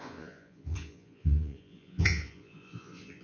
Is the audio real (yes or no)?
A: no